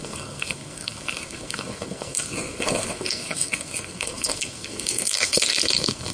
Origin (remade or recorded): remade